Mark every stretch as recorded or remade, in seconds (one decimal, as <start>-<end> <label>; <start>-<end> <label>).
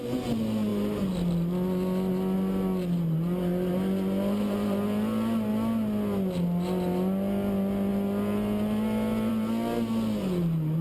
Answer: 0.0-10.8 recorded